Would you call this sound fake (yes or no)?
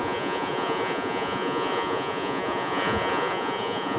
yes